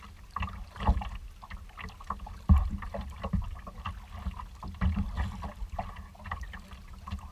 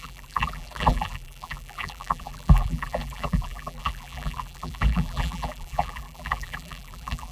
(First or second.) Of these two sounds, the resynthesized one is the second